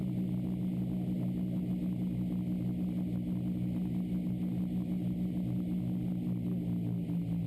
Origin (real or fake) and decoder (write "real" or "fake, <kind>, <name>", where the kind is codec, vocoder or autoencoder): real